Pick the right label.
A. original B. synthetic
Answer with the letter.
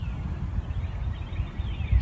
A